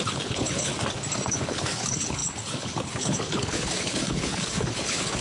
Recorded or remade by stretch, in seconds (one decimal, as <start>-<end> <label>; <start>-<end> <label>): 0.0-0.7 remade; 0.7-1.3 recorded; 1.3-5.2 remade